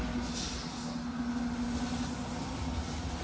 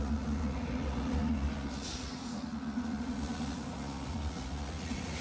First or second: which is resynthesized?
second